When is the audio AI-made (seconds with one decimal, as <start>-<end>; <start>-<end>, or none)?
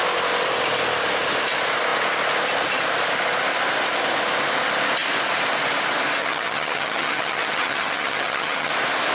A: 6.2-8.7